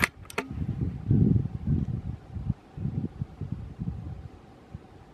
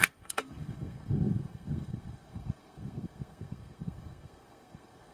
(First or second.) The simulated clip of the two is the second